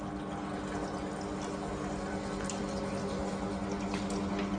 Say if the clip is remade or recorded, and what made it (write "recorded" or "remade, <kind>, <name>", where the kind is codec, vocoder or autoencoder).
recorded